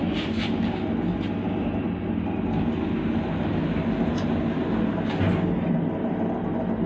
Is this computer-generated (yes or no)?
no